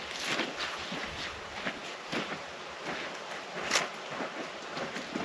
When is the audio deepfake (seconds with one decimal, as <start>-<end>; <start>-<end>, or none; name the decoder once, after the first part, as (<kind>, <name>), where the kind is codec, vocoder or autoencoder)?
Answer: none